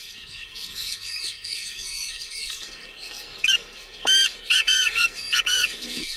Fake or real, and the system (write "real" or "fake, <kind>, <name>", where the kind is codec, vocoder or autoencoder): fake, codec, SNAC